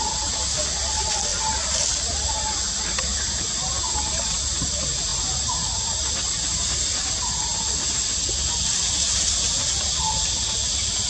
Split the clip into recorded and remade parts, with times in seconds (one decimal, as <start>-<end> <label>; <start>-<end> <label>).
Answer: 0.0-11.1 recorded